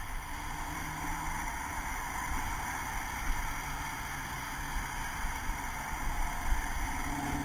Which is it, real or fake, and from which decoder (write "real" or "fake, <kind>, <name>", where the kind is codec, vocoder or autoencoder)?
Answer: fake, vocoder, BigVGAN v2